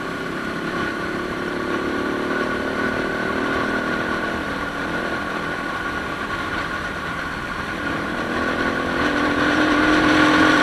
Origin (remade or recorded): remade